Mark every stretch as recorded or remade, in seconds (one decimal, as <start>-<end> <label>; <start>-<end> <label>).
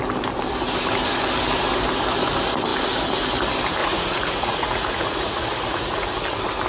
0.0-3.8 recorded; 3.8-6.1 remade; 6.1-6.7 recorded